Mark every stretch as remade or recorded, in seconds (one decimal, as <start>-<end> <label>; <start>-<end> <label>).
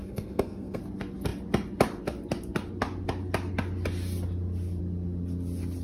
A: 0.0-0.8 remade; 0.8-5.8 recorded